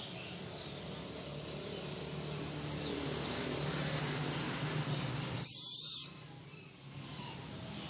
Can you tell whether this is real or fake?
real